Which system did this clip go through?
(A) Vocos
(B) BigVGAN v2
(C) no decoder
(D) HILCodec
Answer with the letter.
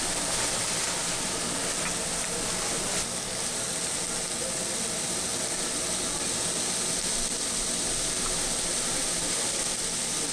C